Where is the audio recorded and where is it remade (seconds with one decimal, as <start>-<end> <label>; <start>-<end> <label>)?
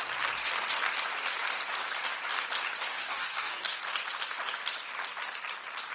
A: 0.0-2.9 recorded; 2.9-3.8 remade; 3.8-5.9 recorded